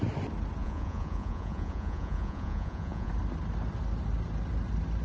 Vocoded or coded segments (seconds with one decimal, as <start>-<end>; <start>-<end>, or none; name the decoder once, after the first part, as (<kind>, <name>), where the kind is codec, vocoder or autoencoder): 0.6-3.1 (vocoder, Vocos)